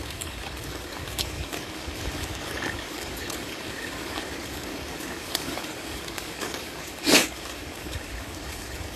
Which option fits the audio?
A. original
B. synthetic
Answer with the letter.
B